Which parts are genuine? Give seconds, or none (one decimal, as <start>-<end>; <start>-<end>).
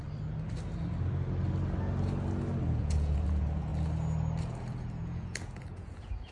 0.0-2.6; 3.7-4.5